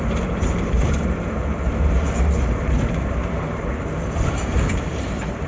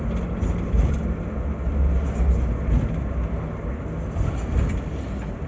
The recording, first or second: second